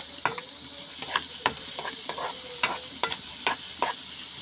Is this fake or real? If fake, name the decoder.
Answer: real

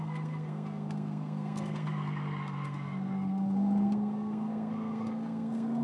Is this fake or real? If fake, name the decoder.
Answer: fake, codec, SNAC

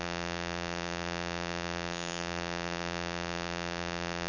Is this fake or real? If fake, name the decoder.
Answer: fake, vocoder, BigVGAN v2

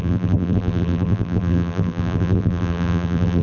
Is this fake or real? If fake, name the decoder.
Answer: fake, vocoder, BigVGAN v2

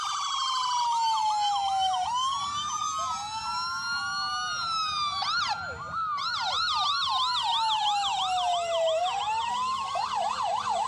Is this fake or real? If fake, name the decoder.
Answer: real